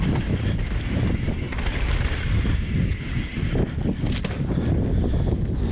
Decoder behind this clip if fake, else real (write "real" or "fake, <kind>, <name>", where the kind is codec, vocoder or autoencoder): real